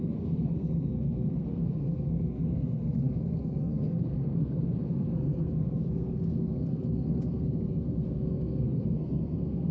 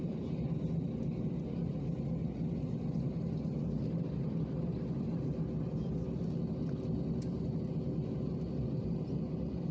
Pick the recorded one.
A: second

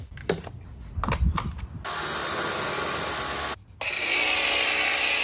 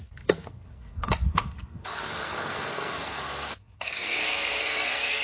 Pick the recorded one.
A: first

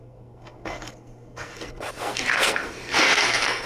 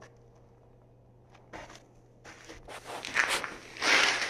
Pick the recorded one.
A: second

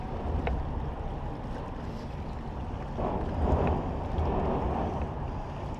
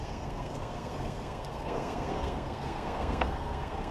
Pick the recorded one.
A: first